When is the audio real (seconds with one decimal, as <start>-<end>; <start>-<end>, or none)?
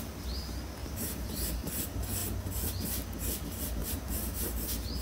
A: 0.0-0.8; 1.7-3.8; 4.4-5.0